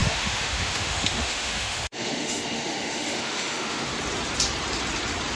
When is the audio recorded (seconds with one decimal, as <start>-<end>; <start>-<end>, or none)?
3.9-5.4